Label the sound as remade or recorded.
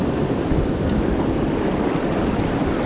recorded